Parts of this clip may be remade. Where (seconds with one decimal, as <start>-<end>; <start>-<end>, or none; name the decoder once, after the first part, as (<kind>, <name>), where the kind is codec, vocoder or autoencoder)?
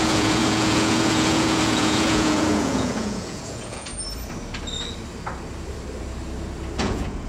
0.0-3.9 (vocoder, Vocos); 6.8-7.3